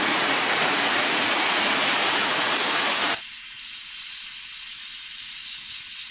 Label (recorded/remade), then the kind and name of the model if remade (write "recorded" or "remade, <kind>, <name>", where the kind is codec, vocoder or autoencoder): remade, vocoder, Vocos